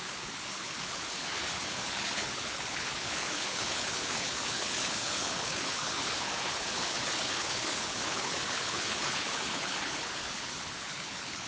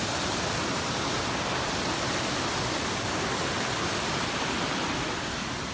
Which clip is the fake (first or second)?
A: first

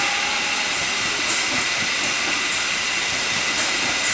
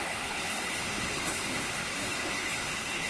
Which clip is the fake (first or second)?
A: second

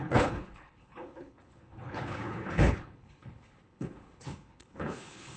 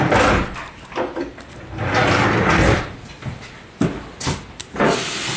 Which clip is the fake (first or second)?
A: first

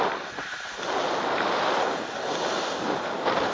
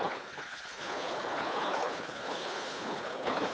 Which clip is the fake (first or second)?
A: second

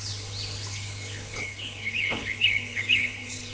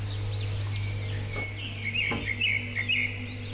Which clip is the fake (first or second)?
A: first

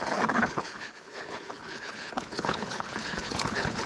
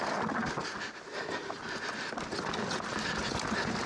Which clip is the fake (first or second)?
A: first